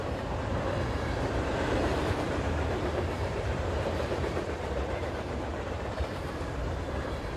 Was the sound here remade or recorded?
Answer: remade